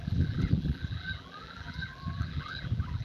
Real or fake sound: fake